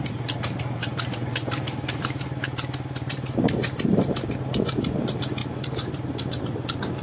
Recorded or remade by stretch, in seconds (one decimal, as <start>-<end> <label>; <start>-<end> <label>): 0.0-0.8 recorded; 0.8-4.2 remade; 4.2-5.4 recorded; 5.4-6.4 remade; 6.4-7.0 recorded